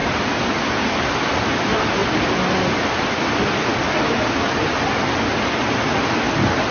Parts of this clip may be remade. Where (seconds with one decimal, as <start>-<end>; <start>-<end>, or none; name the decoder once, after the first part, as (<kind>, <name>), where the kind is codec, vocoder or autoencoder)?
none